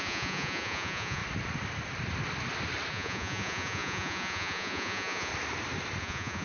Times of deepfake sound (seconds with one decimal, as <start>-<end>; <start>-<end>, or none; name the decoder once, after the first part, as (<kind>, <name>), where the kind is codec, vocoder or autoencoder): 0.0-1.2 (vocoder, Vocos); 2.9-5.3; 6.0-6.4